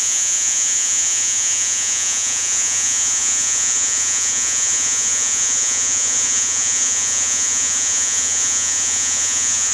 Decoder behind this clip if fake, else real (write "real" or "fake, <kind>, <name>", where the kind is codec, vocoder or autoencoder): fake, vocoder, Vocos